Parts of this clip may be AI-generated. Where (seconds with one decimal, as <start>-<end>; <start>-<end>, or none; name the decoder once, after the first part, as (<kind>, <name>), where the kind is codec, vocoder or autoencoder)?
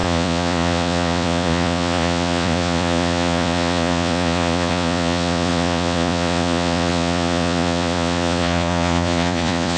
0.0-9.8 (vocoder, Vocos)